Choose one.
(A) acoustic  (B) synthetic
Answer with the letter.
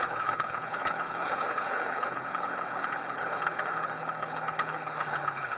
B